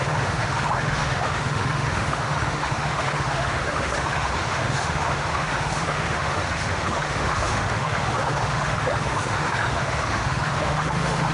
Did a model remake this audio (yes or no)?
yes